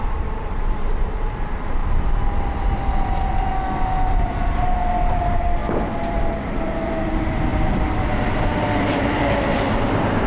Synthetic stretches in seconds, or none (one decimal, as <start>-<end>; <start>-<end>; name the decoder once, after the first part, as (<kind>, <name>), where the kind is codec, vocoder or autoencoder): 0.0-1.8 (vocoder, BigVGAN v2); 3.8-10.3